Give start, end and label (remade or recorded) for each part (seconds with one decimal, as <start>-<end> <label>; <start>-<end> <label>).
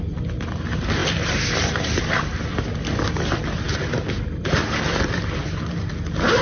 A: 0.0-2.5 remade; 2.5-4.9 recorded; 4.9-6.4 remade